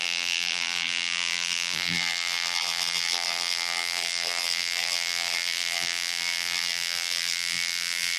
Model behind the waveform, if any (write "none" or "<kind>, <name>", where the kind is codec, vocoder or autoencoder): vocoder, BigVGAN v2